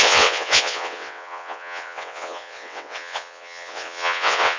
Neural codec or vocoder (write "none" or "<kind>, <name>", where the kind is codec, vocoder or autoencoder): vocoder, WaveNeXt